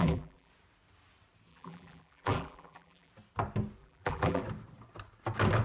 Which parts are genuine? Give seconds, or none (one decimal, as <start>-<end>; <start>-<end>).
0.5-1.5; 3.1-3.8; 4.4-5.6